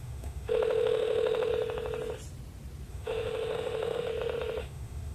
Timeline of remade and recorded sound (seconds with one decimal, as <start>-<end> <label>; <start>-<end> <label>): 0.0-1.5 remade; 1.5-2.9 recorded; 2.9-4.1 remade; 4.1-4.6 recorded; 4.6-5.1 remade